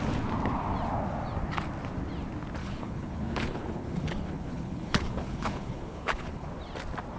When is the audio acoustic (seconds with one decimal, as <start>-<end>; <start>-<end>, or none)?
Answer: 0.0-2.6; 6.5-7.2

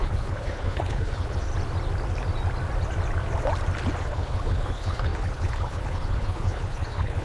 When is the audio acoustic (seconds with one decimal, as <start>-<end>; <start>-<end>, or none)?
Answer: 1.5-4.0

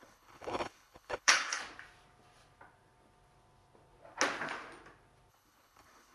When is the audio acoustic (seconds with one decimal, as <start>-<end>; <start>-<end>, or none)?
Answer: 1.6-5.3